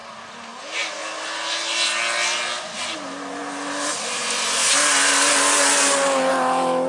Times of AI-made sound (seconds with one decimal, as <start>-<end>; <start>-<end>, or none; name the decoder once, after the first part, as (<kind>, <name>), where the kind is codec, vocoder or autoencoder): none